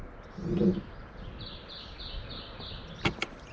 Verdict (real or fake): real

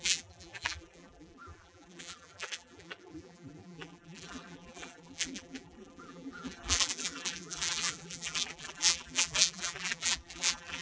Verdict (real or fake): fake